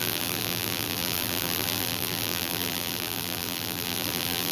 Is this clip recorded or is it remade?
remade